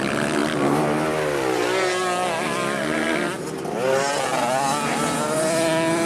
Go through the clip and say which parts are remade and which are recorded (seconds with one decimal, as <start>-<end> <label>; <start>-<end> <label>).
0.0-6.1 recorded